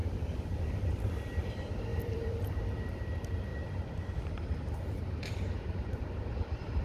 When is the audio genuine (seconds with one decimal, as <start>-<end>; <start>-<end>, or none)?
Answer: 0.0-1.9; 2.6-3.5; 6.0-6.8